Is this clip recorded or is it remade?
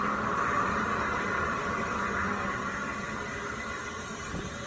recorded